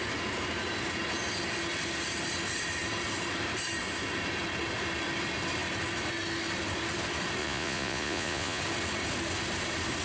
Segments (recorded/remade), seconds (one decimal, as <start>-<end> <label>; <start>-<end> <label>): 0.0-7.4 recorded; 7.4-8.6 remade; 8.6-10.0 recorded